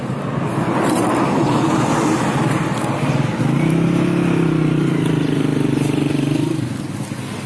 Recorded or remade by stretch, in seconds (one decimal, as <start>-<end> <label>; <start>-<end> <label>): 0.0-1.4 remade; 1.4-2.4 recorded; 2.4-7.5 remade